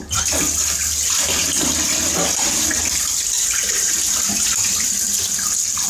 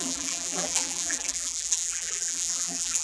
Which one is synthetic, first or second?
second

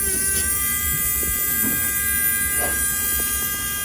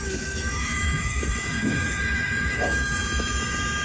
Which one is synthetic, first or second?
second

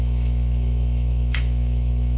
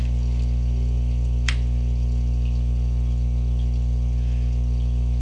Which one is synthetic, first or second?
first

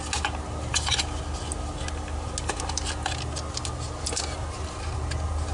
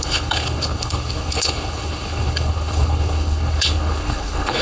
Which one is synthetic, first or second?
second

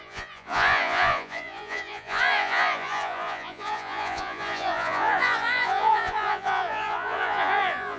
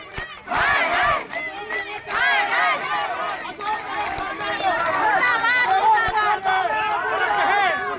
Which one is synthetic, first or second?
first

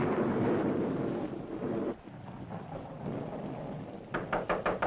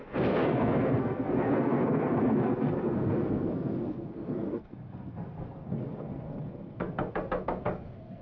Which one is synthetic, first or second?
second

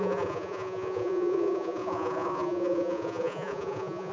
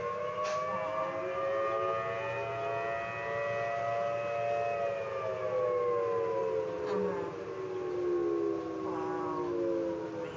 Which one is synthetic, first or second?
first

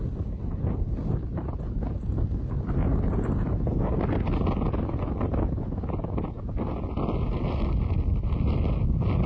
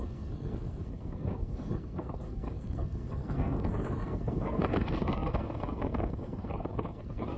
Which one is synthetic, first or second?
second